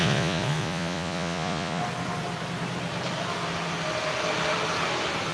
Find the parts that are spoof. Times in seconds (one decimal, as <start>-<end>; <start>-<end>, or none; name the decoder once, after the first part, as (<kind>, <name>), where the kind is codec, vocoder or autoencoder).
0.0-1.8 (vocoder, Vocos)